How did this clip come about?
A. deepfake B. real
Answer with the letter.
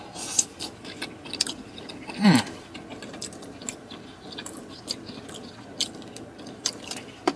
B